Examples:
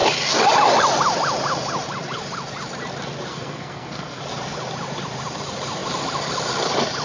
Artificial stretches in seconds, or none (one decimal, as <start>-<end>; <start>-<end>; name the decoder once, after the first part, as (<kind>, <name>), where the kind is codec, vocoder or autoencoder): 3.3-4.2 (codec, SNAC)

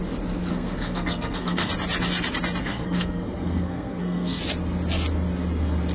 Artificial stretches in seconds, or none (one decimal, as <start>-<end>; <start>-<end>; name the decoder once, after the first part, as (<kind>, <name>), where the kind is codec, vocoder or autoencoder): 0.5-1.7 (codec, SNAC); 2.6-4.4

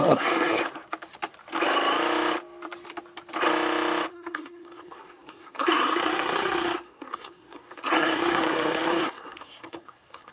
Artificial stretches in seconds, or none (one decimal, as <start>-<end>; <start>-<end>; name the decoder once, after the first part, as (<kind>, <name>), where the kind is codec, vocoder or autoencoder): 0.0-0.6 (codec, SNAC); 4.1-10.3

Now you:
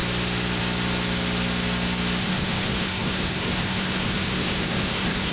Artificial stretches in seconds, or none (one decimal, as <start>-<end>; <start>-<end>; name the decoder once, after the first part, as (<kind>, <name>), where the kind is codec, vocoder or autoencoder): 2.2-5.3 (codec, SNAC)

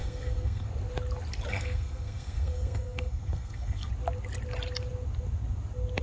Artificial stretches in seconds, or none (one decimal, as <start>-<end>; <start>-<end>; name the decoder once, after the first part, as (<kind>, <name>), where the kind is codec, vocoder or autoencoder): 0.0-0.7 (codec, SNAC); 1.5-3.9

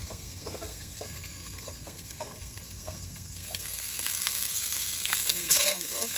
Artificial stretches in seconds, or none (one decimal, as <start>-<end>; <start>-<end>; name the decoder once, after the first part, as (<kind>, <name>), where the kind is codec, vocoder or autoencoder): 0.0-6.2 (codec, SNAC)

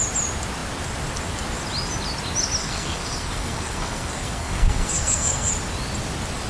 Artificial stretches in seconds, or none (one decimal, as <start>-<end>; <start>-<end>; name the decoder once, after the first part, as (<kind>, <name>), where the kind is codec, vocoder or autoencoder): 2.6-5.5 (codec, SNAC)

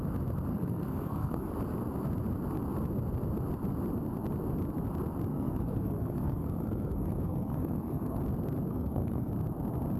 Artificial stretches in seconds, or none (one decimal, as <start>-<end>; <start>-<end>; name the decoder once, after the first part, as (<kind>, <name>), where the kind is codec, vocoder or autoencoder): 0.5-1.5 (codec, SNAC); 5.3-8.2; 8.7-9.3